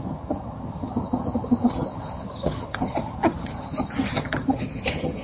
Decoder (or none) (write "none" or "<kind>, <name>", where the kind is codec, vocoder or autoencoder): vocoder, HiFi-GAN